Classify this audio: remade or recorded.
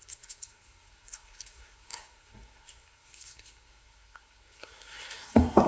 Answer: remade